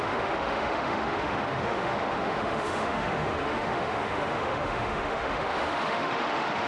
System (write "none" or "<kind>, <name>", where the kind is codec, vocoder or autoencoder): autoencoder, DAC-VAE